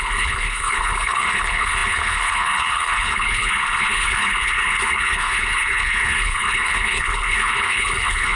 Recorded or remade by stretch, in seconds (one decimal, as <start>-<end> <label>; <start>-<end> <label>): 0.0-8.4 remade